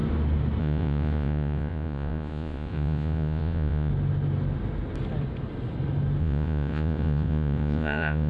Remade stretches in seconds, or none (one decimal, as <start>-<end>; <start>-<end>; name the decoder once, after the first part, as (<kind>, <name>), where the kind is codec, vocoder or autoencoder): 0.6-3.9 (vocoder, Vocos); 6.2-8.3